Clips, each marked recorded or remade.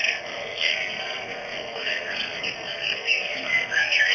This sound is remade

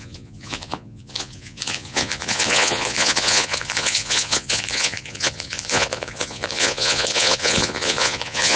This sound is remade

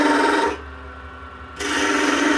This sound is recorded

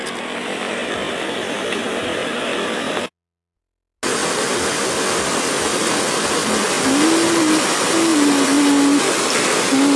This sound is recorded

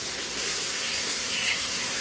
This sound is remade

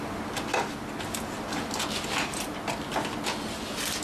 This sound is recorded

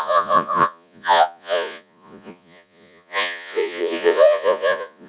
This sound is remade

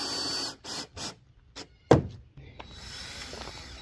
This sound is recorded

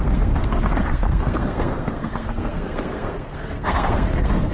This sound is remade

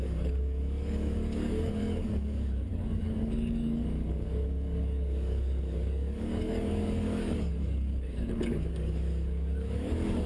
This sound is remade